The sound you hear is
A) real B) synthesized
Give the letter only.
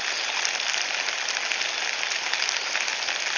A